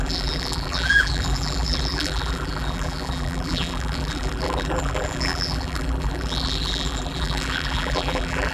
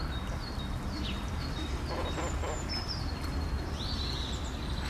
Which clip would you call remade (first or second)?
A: first